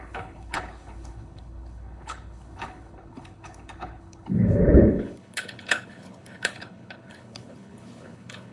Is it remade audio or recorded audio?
remade